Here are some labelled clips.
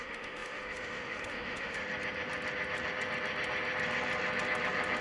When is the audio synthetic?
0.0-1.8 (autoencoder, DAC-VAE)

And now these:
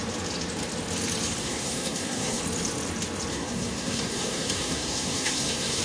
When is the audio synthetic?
1.4-2.4 (codec, SNAC); 3.3-5.8

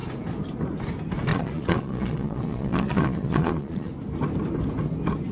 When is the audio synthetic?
1.3-3.9 (vocoder, Vocos)

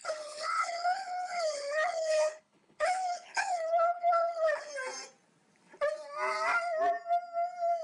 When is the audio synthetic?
0.0-4.7 (codec, HILCodec)

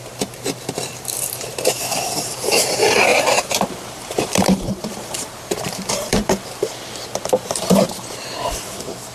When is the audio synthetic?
0.0-9.1 (vocoder, BigVGAN v2)

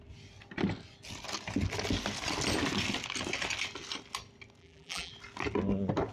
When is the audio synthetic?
4.6-5.1 (vocoder, BigVGAN v2)

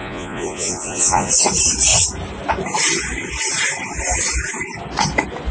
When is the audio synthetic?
0.0-1.3 (vocoder, Vocos)

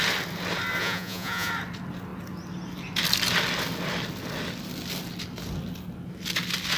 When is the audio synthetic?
0.8-1.5 (vocoder, Vocos)